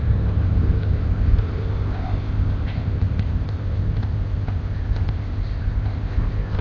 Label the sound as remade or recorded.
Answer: remade